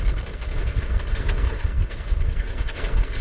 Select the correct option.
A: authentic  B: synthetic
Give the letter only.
B